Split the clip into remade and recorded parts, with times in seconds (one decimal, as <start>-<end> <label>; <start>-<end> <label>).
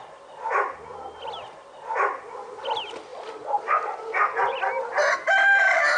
0.0-3.1 remade; 3.1-5.1 recorded; 5.1-6.0 remade